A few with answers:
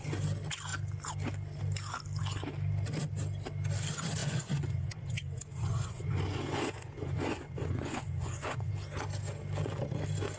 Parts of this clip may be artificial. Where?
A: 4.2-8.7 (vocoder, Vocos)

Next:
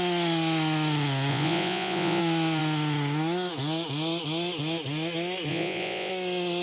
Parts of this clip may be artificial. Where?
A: 1.3-2.2 (vocoder, Vocos); 5.5-6.1